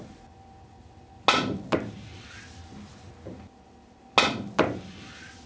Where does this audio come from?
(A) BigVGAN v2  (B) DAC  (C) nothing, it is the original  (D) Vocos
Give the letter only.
C